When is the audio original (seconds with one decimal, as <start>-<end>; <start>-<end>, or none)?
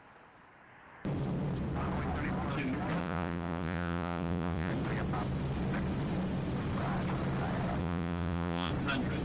0.0-3.0; 4.7-7.8; 8.7-9.2